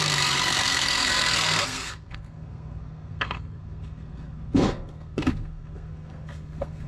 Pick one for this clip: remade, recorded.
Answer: remade